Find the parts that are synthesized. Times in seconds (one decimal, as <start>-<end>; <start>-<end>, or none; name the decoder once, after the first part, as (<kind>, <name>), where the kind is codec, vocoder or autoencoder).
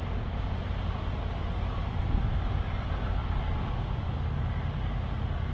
none